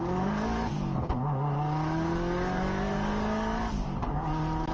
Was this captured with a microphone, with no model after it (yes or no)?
no